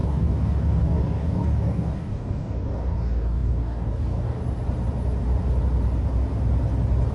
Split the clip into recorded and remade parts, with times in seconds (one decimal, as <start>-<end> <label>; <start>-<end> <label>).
0.0-4.4 remade; 4.4-7.1 recorded